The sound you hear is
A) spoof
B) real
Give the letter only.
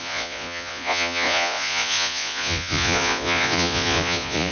A